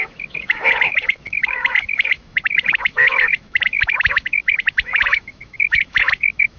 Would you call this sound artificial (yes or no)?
yes